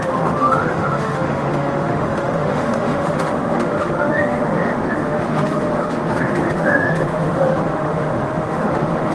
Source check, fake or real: fake